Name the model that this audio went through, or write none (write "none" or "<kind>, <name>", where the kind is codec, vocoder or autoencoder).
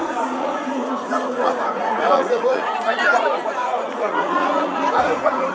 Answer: vocoder, Vocos